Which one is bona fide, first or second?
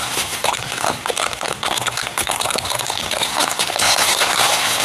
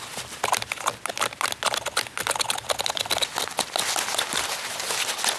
second